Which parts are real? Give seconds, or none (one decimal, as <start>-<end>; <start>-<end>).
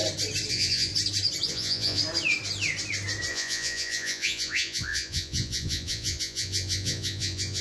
0.0-0.5; 0.9-1.5; 2.0-3.3